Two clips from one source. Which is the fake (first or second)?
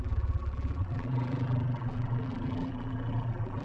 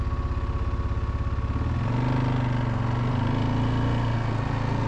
first